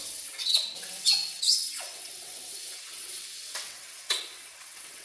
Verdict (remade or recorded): remade